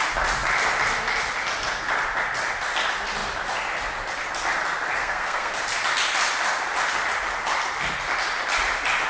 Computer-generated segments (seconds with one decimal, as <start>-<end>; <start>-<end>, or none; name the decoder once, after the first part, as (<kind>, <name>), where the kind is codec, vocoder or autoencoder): 5.0-5.5 (codec, SNAC)